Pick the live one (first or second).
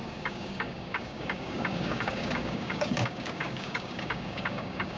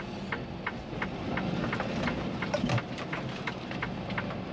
second